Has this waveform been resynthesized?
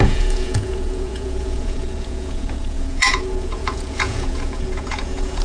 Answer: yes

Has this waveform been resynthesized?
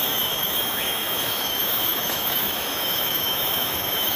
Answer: yes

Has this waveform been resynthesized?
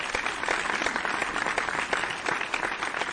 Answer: no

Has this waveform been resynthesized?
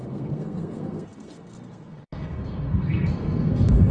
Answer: yes